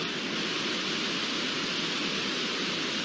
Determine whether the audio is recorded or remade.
recorded